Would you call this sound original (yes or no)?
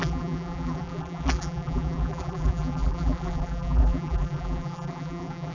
no